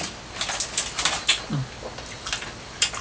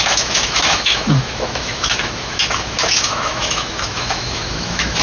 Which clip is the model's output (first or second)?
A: second